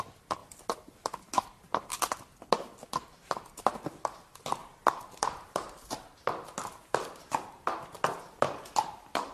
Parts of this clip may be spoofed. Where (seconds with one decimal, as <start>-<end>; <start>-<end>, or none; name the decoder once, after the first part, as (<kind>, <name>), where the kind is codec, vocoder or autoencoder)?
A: none